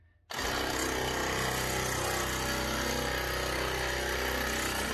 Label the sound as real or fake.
real